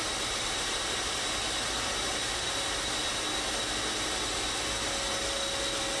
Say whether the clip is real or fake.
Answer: real